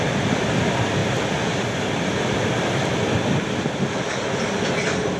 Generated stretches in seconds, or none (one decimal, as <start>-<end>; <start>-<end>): none